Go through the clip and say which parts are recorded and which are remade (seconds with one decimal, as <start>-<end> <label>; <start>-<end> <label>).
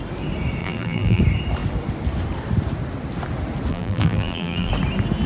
0.0-0.6 recorded; 0.6-1.2 remade; 1.2-3.7 recorded; 3.7-4.7 remade; 4.7-5.3 recorded